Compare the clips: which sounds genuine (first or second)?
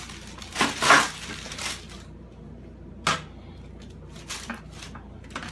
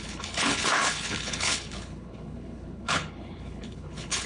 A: first